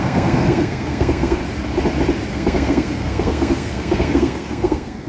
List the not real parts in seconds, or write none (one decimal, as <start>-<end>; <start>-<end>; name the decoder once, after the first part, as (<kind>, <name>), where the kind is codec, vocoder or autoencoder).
0.0-1.4 (codec, SNAC); 2.3-5.1